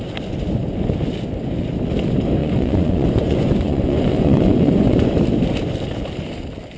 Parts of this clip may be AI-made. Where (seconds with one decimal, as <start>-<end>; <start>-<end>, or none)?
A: 2.4-5.1